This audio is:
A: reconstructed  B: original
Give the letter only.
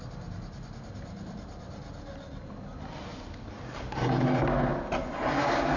B